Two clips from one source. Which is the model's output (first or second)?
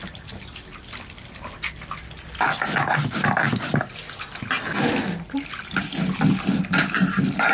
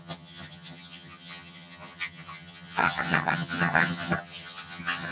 second